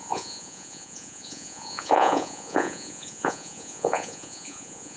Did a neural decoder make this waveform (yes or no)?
yes